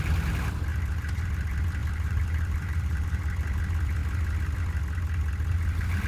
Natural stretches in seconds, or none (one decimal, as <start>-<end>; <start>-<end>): 0.0-0.7; 1.3-1.8; 3.2-6.1